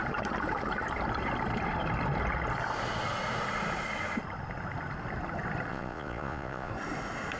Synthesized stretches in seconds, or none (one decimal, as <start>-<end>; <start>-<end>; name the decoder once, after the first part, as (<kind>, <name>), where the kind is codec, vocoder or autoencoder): 5.7-6.7 (vocoder, Vocos)